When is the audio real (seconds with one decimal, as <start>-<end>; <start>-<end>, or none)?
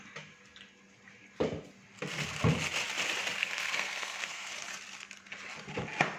0.0-3.4; 4.5-6.2